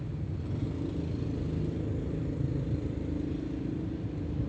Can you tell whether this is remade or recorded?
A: recorded